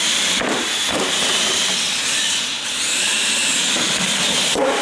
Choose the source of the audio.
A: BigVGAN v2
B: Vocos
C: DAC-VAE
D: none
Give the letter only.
D